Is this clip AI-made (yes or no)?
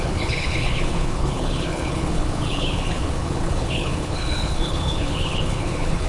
yes